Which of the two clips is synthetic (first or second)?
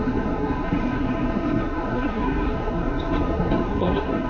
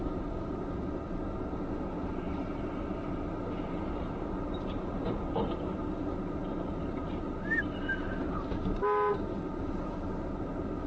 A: first